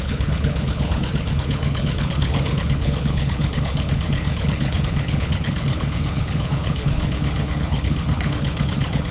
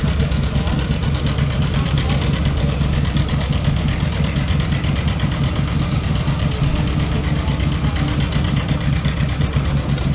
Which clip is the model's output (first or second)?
first